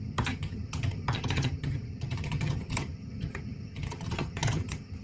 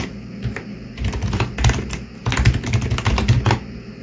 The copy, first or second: first